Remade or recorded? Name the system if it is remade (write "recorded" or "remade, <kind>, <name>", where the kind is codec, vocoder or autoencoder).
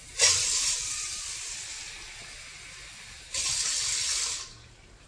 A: recorded